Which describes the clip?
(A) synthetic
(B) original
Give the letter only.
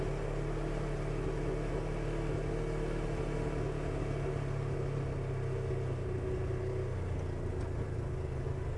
B